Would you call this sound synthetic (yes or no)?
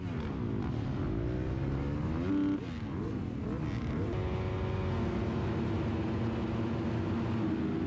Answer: no